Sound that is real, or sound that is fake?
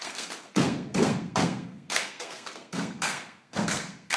fake